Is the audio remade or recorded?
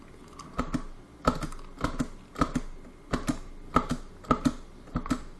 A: recorded